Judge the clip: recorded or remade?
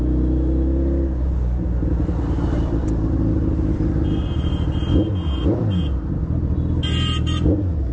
recorded